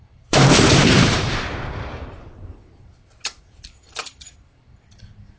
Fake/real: fake